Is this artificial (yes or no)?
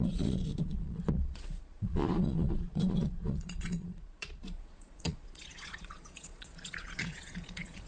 yes